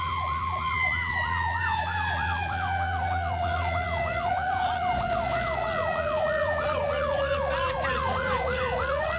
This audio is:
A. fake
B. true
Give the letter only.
A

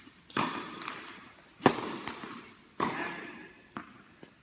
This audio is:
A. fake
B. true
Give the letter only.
B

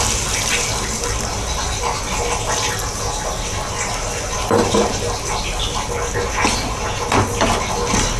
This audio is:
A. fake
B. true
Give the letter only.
B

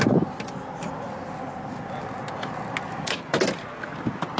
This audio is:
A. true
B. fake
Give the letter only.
A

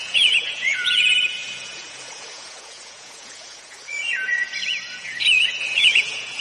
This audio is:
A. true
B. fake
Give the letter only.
B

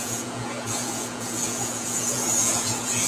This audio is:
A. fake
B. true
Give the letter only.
A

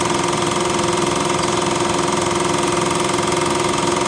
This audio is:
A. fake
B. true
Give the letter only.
B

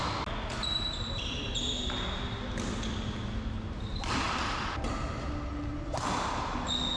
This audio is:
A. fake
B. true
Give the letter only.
B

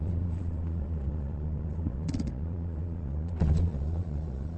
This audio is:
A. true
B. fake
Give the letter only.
B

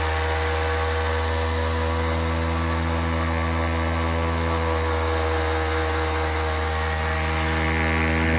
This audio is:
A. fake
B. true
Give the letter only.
B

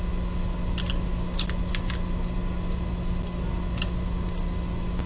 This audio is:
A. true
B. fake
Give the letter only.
A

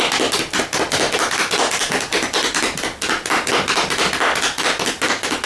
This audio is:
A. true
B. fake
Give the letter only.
A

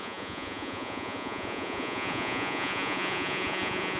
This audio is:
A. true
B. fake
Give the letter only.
B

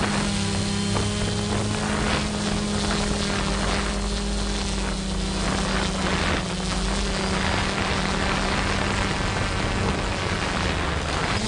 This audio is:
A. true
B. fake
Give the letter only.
A